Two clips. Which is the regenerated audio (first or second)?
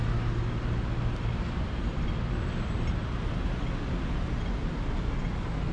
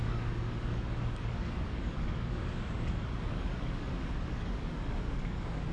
second